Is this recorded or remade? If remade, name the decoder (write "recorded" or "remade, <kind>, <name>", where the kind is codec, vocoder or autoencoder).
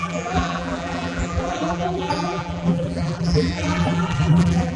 remade, vocoder, BigVGAN v2